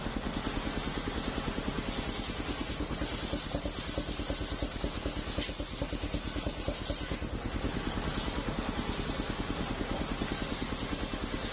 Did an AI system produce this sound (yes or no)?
no